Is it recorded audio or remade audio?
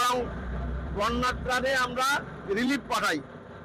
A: remade